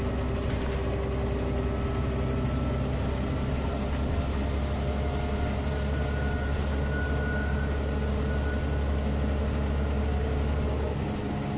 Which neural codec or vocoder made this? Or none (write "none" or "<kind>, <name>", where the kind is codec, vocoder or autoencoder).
none